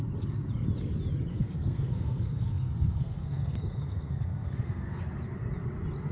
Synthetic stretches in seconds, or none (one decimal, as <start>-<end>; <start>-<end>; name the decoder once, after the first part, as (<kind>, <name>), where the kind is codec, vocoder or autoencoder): 1.3-5.0 (codec, SNAC)